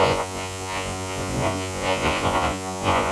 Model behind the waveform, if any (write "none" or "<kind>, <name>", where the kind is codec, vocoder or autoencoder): vocoder, Vocos